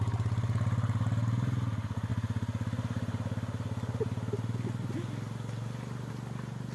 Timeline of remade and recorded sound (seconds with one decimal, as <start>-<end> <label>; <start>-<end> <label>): 0.0-6.7 recorded